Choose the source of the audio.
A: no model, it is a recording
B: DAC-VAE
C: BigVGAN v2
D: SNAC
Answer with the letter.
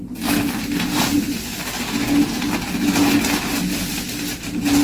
A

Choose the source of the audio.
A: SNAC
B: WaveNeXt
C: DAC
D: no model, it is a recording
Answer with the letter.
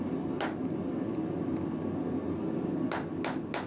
D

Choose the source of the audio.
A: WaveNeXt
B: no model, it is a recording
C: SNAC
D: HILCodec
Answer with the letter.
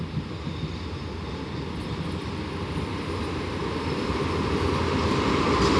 B